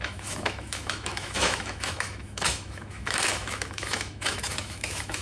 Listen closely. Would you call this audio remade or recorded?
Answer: remade